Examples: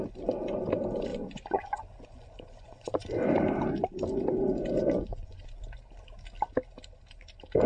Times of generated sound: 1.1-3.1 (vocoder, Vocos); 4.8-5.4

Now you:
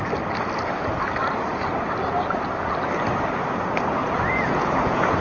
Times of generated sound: 4.0-5.2 (vocoder, Vocos)

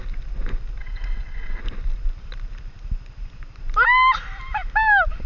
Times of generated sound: 0.8-1.6 (vocoder, WaveNeXt)

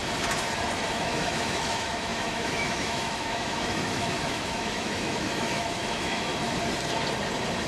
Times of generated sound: 0.9-6.3 (autoencoder, DAC-VAE)